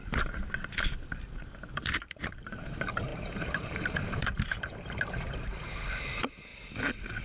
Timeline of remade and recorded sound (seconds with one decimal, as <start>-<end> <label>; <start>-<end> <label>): 0.0-1.7 recorded; 1.7-6.5 remade; 6.5-7.2 recorded